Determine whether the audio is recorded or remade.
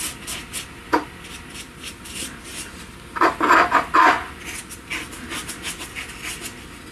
recorded